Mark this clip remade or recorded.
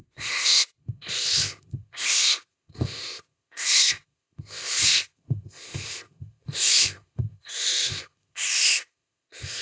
remade